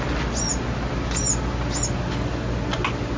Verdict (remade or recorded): recorded